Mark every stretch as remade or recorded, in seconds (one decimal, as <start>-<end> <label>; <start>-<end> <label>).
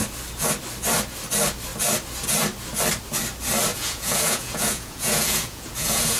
0.0-3.7 recorded; 3.7-6.2 remade